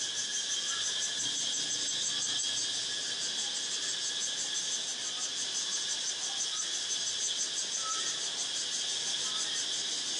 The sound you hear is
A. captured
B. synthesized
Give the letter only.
A